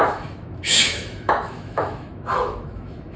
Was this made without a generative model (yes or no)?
no